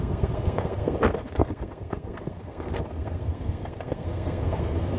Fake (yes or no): yes